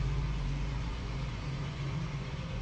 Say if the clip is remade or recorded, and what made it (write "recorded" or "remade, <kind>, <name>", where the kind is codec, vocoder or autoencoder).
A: remade, vocoder, Vocos